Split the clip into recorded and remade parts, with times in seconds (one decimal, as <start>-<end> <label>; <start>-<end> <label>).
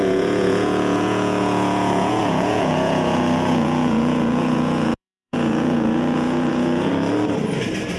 0.0-6.9 remade; 6.9-8.0 recorded